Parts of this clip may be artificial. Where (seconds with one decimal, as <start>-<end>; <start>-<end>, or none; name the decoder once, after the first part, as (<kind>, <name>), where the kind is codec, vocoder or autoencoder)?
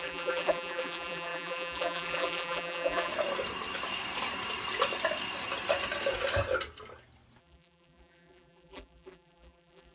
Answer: 0.0-3.1 (vocoder, BigVGAN v2); 7.4-9.9